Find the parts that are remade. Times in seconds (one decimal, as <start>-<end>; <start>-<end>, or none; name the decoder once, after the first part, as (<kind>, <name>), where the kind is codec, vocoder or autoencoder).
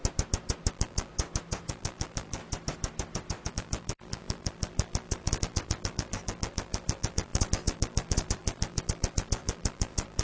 0.7-1.1 (vocoder, BigVGAN v2); 1.7-2.4; 3.5-10.2